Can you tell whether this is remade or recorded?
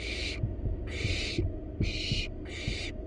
recorded